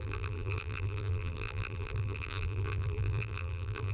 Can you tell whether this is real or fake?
fake